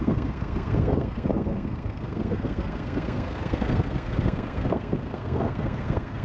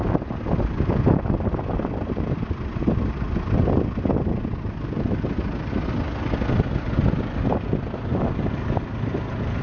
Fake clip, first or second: first